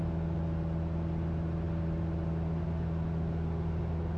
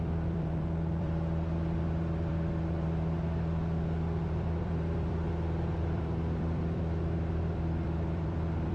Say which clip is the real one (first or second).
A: first